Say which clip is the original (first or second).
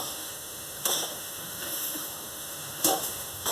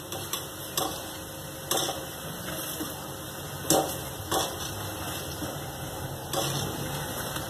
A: second